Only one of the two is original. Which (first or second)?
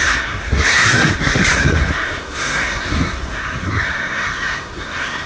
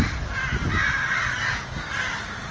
second